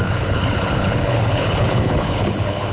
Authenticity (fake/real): fake